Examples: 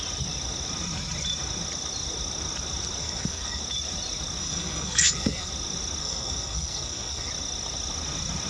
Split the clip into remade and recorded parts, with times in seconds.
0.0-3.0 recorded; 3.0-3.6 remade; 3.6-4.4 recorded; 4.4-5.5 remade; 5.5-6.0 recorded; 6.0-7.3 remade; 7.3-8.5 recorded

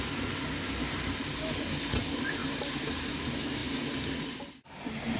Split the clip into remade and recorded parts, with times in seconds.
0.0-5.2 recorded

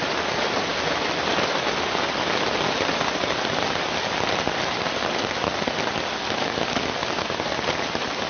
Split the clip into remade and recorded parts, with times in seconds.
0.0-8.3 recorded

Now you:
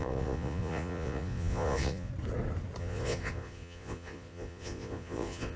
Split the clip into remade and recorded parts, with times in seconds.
0.0-2.1 remade; 2.1-2.8 recorded; 2.8-5.6 remade

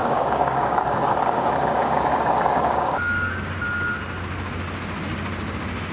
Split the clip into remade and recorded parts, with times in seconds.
0.0-3.5 remade; 3.5-5.9 recorded

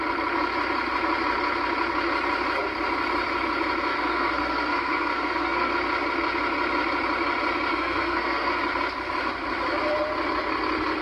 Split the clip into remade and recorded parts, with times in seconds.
0.0-3.9 recorded; 3.9-5.7 remade; 5.7-7.7 recorded; 7.7-8.6 remade; 8.6-11.0 recorded